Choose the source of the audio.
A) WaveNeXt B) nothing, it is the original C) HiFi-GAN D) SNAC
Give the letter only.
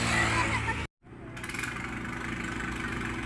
B